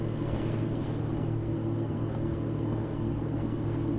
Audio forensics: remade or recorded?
remade